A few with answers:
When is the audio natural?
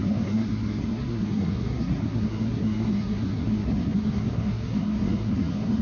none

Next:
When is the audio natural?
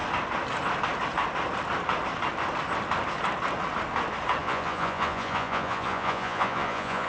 0.0-4.4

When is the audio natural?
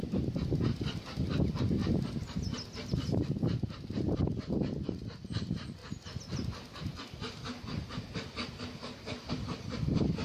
0.0-1.0; 1.8-4.2; 5.8-9.3